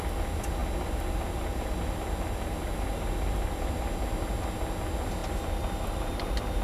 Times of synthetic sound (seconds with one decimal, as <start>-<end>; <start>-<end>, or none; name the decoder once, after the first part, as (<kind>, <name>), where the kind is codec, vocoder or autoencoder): none